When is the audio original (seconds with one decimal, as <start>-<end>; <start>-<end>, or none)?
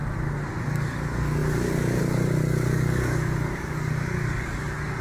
0.0-0.6